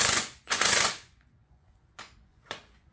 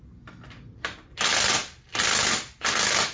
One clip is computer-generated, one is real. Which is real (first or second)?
second